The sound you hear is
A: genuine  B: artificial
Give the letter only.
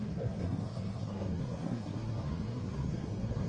B